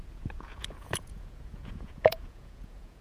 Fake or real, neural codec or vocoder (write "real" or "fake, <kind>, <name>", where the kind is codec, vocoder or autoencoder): fake, vocoder, Vocos